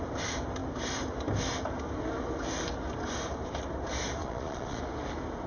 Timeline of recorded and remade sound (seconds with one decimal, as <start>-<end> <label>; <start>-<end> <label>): 0.0-4.2 recorded; 4.2-4.8 remade; 4.8-5.5 recorded